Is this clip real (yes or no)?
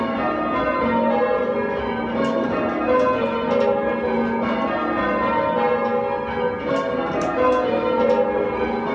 yes